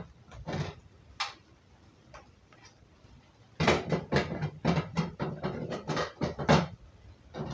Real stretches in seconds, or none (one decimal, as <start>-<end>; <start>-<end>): 0.0-4.9; 5.7-7.5